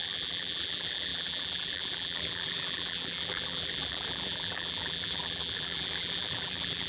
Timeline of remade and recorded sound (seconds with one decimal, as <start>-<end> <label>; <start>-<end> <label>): 0.0-6.9 remade